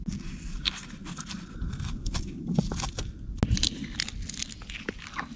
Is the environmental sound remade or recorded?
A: recorded